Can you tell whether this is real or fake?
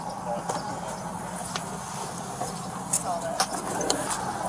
real